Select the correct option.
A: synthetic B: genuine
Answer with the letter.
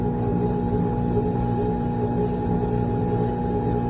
B